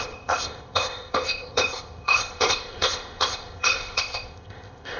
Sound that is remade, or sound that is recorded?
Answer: remade